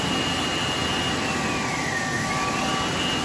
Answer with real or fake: real